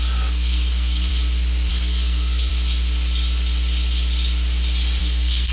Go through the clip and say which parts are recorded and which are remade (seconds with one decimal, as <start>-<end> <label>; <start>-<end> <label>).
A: 0.0-1.1 remade; 1.1-1.7 recorded; 1.7-2.5 remade; 2.5-5.0 recorded; 5.0-5.5 remade